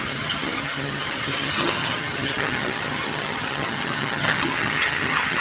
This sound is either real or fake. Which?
fake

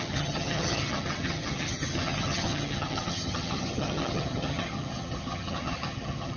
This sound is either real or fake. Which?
fake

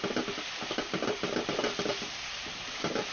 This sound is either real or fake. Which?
real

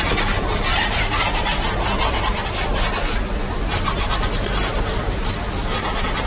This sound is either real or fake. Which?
real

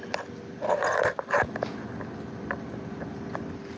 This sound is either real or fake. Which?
real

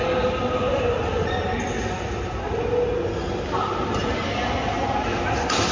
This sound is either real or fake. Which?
real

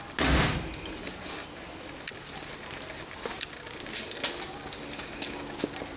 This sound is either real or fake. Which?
real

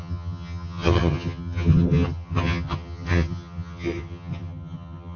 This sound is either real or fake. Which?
fake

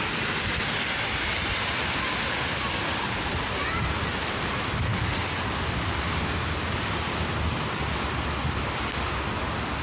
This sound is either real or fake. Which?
real